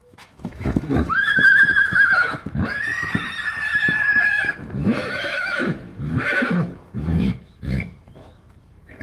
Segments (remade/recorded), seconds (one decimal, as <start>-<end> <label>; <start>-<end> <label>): 0.0-2.9 remade; 2.9-4.5 recorded; 4.5-9.0 remade

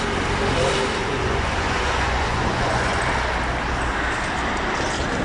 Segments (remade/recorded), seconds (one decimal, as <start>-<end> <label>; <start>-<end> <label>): 0.0-1.0 recorded; 1.0-3.0 remade; 3.0-5.2 recorded

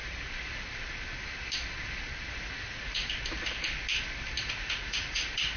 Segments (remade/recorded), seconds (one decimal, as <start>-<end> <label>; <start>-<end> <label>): 0.0-2.4 recorded; 2.4-3.0 remade; 3.0-4.4 recorded; 4.4-5.6 remade